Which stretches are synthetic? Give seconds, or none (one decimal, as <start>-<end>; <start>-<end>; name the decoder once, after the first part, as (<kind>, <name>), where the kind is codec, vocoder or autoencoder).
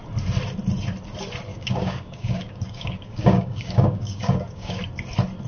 1.5-4.8 (codec, DAC)